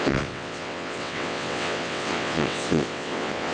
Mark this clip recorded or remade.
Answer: remade